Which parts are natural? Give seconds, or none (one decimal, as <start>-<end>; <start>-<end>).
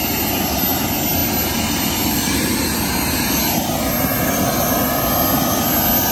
0.0-6.1